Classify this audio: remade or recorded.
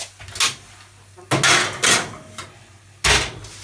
recorded